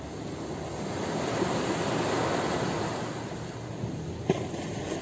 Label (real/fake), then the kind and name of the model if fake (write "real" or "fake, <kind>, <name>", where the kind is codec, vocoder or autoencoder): real